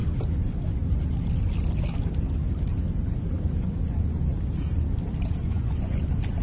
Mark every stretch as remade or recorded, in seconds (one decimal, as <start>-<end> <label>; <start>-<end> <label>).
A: 0.0-5.4 recorded; 5.4-6.0 remade; 6.0-6.4 recorded